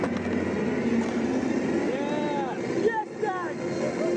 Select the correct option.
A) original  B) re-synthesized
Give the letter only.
A